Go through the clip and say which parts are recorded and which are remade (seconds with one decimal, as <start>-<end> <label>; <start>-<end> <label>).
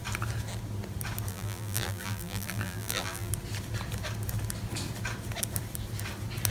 0.0-1.3 recorded; 1.3-3.3 remade; 3.3-6.5 recorded